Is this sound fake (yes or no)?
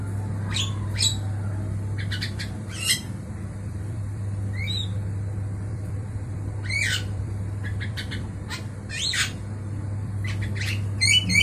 yes